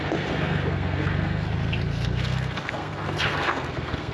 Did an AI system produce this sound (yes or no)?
yes